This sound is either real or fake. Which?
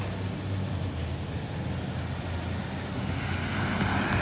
real